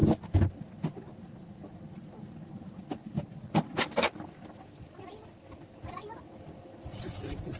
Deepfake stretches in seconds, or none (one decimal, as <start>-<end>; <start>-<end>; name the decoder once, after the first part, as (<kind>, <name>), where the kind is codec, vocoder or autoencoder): none